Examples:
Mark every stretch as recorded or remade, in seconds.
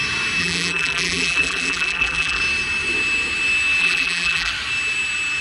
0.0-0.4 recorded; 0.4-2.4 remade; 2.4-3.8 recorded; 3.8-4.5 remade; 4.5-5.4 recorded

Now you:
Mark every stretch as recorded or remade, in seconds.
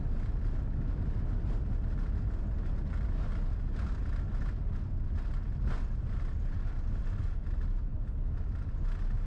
0.0-9.3 recorded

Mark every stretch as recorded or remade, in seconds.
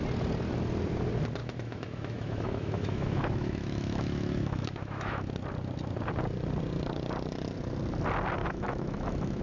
0.0-1.4 recorded; 1.4-5.3 remade; 5.3-8.4 recorded; 8.4-9.4 remade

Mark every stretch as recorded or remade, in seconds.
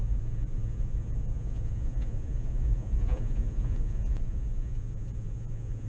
0.0-5.9 remade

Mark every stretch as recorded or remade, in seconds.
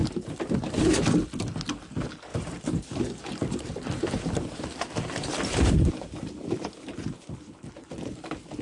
0.0-1.0 remade; 1.0-2.3 recorded; 2.3-5.9 remade; 5.9-8.6 recorded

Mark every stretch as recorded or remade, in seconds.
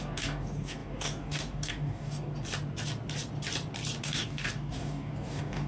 0.0-2.3 remade; 2.3-4.0 recorded; 4.0-5.7 remade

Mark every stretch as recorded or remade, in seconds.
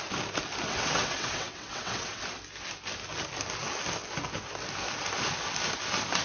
0.0-0.7 recorded; 0.7-2.2 remade; 2.2-6.2 recorded